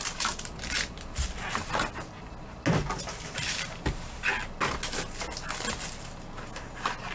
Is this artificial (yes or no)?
no